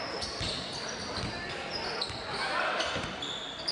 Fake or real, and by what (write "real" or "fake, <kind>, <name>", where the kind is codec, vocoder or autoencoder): real